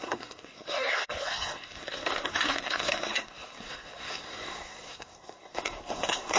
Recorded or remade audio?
remade